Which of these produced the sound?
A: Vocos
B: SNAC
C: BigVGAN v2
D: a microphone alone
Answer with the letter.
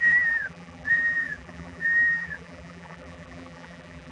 C